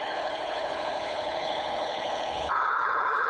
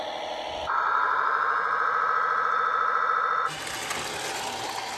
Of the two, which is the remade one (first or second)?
first